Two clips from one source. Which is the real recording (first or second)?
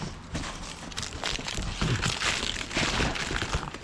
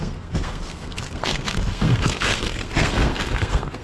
first